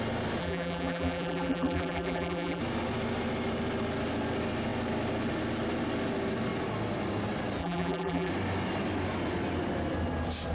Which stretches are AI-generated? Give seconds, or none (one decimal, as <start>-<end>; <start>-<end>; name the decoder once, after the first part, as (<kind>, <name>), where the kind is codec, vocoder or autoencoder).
0.4-2.6 (vocoder, BigVGAN v2); 7.6-8.3